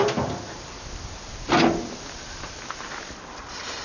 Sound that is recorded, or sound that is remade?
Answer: recorded